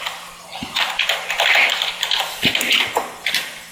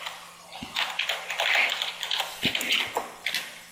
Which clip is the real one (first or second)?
second